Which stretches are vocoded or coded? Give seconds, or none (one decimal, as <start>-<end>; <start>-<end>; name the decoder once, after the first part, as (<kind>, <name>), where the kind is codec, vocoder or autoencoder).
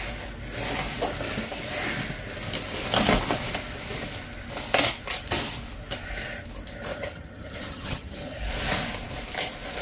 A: 6.9-8.4 (vocoder, HiFi-GAN)